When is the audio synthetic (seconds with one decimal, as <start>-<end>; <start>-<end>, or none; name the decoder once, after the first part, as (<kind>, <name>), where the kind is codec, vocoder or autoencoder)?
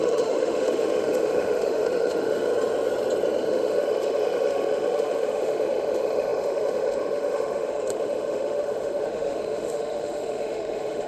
0.0-2.5 (autoencoder, DAC-VAE); 3.4-11.1